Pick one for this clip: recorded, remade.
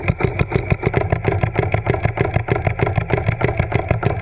recorded